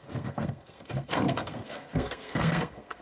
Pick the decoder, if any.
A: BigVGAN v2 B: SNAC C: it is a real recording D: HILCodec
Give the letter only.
B